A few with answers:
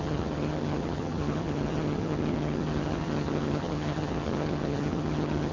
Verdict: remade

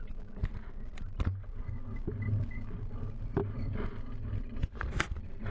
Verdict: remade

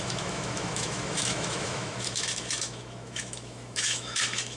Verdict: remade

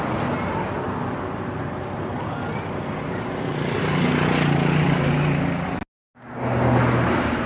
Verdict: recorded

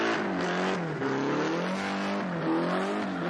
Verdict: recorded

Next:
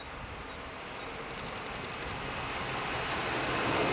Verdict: recorded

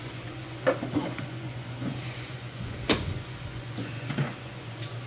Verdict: remade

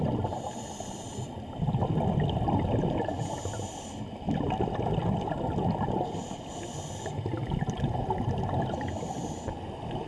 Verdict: recorded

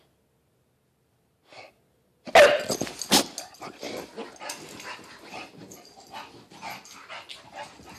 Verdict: recorded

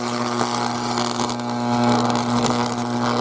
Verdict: recorded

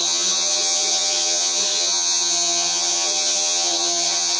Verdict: remade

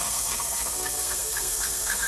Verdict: remade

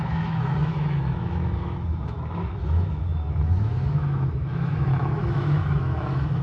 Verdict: remade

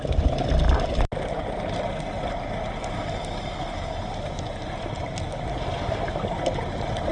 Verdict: recorded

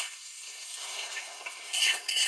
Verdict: remade